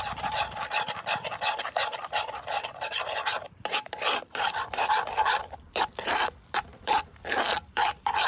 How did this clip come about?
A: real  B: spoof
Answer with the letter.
B